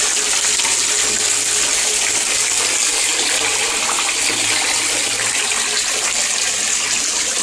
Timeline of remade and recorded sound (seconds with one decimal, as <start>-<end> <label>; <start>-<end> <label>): 0.0-7.4 recorded